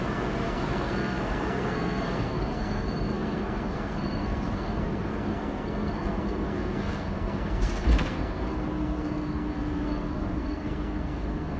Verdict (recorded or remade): remade